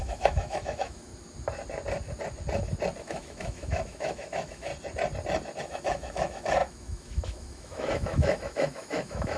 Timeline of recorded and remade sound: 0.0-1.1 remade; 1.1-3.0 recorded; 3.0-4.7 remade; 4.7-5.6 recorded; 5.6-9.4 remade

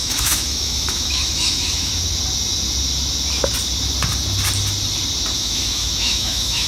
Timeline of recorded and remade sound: 0.0-1.9 remade; 1.9-5.3 recorded; 5.3-6.7 remade

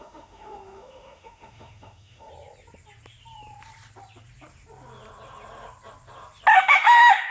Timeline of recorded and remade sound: 0.0-2.3 remade; 2.3-6.6 recorded; 6.6-7.3 remade

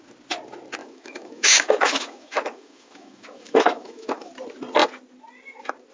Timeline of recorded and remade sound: 0.0-0.8 recorded; 0.8-4.3 remade; 4.3-5.9 recorded